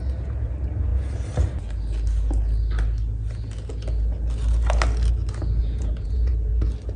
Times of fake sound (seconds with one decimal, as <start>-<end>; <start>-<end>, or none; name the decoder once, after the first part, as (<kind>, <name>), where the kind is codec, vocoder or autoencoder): 5.6-6.5 (vocoder, Vocos)